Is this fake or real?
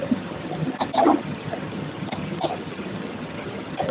fake